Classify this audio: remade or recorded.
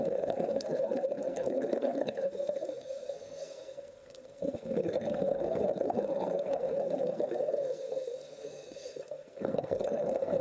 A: remade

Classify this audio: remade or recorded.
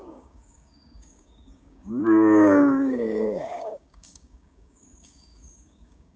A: remade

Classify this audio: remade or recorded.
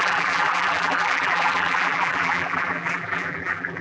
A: remade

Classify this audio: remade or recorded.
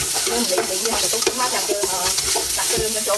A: recorded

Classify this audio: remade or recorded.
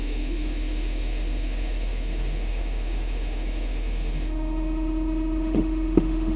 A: remade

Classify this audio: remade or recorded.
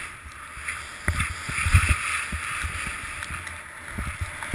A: recorded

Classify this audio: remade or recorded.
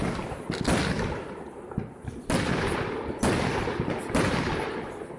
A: recorded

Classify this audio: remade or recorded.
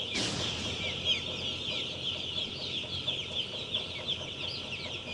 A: recorded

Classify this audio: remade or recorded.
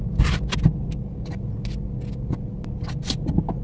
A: recorded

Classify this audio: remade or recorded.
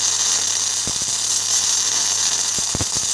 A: recorded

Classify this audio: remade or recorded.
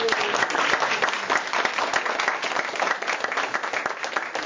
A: recorded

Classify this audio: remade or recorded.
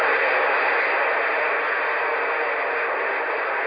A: recorded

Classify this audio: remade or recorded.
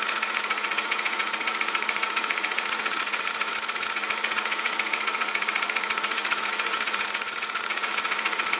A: remade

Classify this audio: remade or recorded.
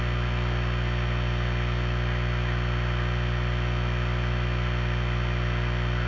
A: recorded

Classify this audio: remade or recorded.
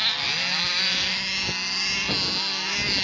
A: recorded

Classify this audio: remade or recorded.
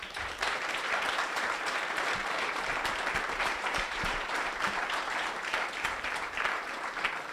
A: remade